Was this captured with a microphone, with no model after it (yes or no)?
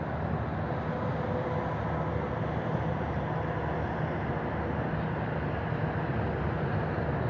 yes